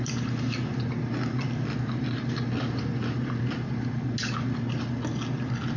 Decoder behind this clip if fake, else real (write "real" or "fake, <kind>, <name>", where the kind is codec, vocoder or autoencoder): real